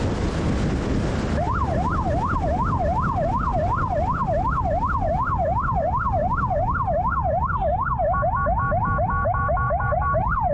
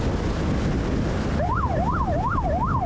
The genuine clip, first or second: second